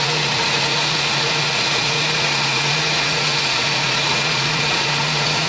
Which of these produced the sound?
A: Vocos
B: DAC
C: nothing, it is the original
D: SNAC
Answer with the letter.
A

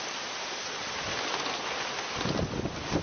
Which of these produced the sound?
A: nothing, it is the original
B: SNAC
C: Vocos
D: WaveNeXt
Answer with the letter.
A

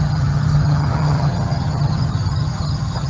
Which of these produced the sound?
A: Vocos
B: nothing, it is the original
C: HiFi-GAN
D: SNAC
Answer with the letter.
C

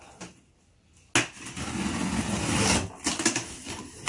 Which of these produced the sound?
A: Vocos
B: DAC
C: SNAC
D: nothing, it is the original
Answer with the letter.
D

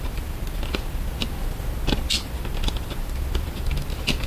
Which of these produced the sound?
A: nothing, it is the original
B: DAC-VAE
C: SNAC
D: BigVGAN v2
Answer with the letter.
A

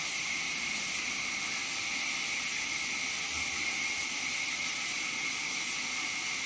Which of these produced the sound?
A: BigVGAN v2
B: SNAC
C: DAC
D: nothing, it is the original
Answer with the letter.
D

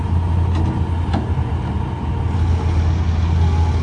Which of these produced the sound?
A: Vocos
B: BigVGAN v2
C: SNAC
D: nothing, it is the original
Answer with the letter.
D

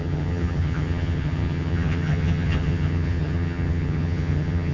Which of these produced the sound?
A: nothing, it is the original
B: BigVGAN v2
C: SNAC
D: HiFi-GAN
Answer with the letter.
D